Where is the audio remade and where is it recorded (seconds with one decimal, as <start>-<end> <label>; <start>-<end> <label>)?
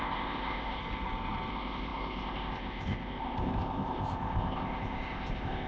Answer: 0.0-0.8 remade; 0.8-1.5 recorded; 1.5-5.7 remade